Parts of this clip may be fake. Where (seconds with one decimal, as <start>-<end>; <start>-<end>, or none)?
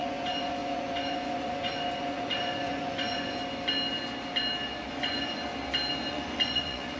0.0-3.4; 4.9-5.5; 6.1-7.0